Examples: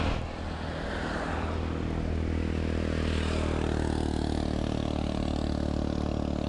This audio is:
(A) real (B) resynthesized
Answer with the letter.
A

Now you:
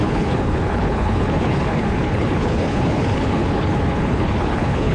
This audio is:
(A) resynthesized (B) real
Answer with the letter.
A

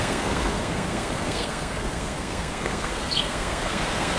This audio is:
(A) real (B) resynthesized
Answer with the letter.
B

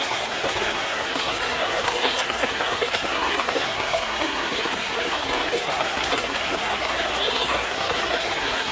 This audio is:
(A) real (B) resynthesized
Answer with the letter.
B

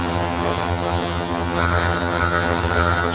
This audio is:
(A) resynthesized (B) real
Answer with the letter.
A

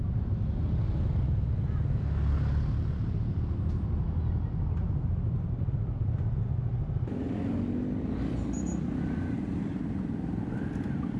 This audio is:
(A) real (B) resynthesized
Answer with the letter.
A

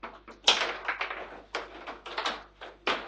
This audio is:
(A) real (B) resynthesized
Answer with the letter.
A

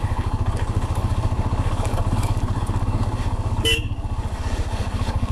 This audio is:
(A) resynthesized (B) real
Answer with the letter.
A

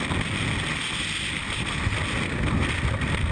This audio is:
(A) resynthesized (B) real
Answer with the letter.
B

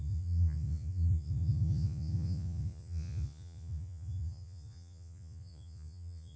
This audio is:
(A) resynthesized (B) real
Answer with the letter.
A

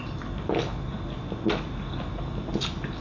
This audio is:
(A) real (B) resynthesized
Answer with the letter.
A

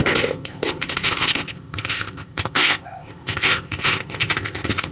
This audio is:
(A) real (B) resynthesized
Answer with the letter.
B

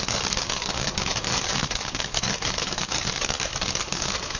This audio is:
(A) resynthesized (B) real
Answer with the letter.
A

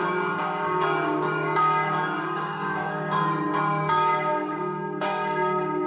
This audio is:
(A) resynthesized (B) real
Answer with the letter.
A